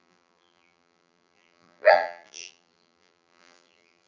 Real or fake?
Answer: fake